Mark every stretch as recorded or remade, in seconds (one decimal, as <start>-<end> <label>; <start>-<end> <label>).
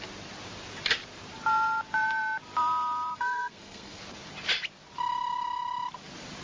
0.0-3.1 recorded; 3.1-4.0 remade; 4.0-6.4 recorded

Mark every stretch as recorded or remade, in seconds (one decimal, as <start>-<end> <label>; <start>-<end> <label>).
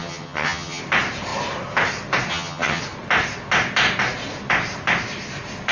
0.0-0.8 remade; 0.8-2.3 recorded; 2.3-2.8 remade; 2.8-5.7 recorded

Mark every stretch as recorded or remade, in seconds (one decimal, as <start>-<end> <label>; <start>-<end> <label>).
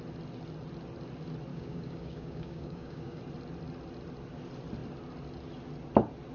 0.0-1.5 recorded; 1.5-3.2 remade; 3.2-6.3 recorded